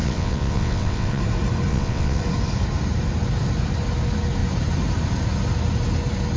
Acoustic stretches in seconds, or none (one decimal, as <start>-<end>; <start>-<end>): 1.2-1.7; 2.2-6.4